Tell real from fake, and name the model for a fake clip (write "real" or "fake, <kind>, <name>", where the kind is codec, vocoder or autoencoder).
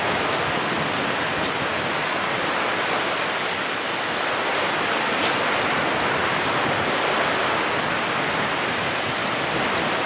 real